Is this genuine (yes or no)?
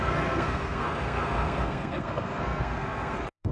no